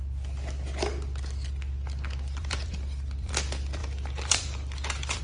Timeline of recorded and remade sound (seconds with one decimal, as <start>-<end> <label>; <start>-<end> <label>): 0.0-2.4 recorded; 2.4-3.3 remade; 3.3-3.8 recorded; 3.8-5.2 remade